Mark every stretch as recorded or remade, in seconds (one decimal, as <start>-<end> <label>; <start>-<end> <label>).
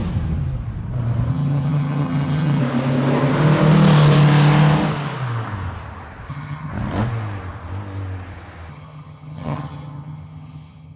0.0-1.3 recorded; 1.3-2.6 remade; 2.6-6.3 recorded; 6.3-6.7 remade; 6.7-8.7 recorded; 8.7-11.0 remade